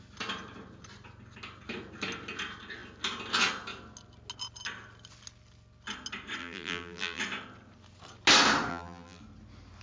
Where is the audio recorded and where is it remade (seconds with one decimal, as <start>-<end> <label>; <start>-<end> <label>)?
0.0-6.4 recorded; 6.4-7.2 remade; 7.2-8.7 recorded; 8.7-9.2 remade; 9.2-9.8 recorded

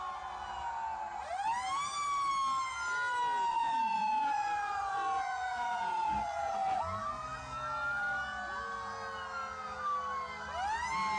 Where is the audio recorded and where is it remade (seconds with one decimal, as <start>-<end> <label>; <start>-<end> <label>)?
0.0-3.5 recorded; 3.5-6.8 remade; 6.8-11.2 recorded

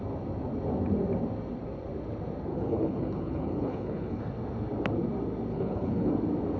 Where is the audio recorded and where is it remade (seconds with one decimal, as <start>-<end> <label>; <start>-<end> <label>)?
0.0-2.5 recorded; 2.5-4.2 remade; 4.2-5.5 recorded; 5.5-6.1 remade; 6.1-6.6 recorded

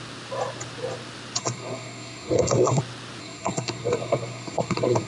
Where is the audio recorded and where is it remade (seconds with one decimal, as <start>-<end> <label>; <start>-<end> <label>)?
0.0-1.4 recorded; 1.4-2.8 remade; 2.8-3.2 recorded; 3.2-5.1 remade

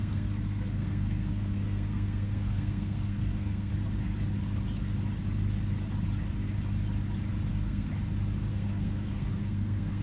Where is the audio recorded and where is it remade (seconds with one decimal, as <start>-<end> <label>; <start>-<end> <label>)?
0.0-3.7 remade; 3.7-7.5 recorded; 7.5-7.9 remade; 7.9-8.5 recorded; 8.5-10.0 remade

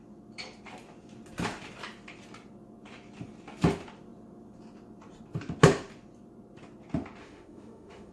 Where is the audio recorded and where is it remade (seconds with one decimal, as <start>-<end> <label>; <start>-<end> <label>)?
0.0-7.2 recorded; 7.2-8.1 remade

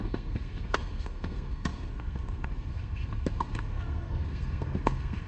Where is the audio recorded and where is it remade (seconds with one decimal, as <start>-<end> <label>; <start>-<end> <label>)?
0.0-5.3 remade